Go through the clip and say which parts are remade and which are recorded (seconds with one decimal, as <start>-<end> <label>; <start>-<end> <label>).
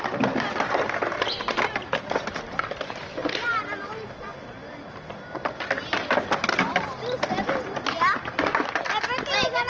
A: 0.0-9.7 recorded